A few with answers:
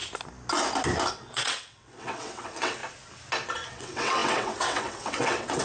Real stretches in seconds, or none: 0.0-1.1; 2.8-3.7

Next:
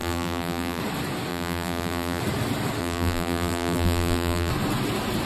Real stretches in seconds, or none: 0.8-1.3; 2.2-2.8; 4.5-5.3

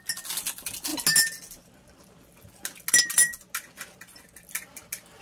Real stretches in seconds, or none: 0.0-5.2

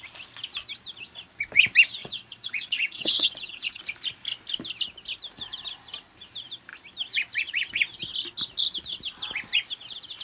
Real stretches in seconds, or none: 0.0-2.0; 3.8-10.2

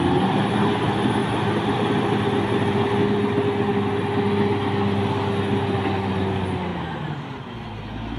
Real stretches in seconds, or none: 0.0-8.2

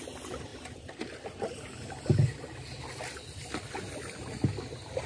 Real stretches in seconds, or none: 0.0-5.1

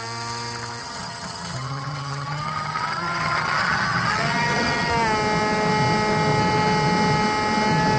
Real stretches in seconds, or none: 0.0-0.8; 4.9-8.0